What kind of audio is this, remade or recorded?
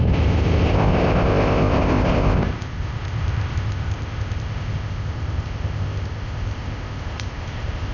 remade